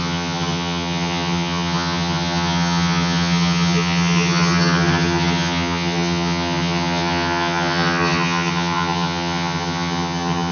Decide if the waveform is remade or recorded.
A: remade